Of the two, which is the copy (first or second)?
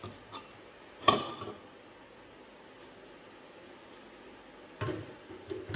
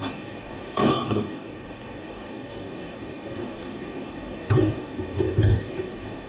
second